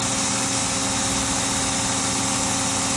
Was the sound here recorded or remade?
recorded